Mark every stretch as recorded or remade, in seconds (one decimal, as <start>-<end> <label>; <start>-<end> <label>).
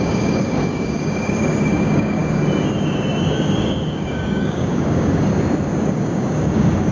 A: 0.0-2.2 remade; 2.2-3.6 recorded; 3.6-5.3 remade; 5.3-5.8 recorded; 5.8-6.9 remade